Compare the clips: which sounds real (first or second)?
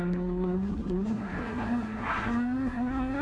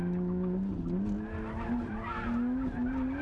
second